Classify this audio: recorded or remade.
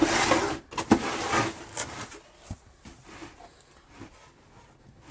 recorded